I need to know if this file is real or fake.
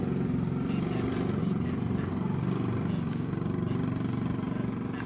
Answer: real